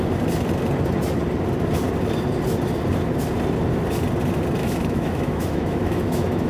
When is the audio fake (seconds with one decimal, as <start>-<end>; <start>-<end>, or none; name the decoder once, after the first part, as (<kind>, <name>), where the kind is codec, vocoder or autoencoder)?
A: 4.6-6.5 (autoencoder, DAC-VAE)